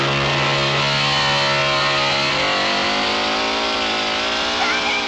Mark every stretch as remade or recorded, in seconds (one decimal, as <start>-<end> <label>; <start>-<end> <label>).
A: 0.0-5.1 recorded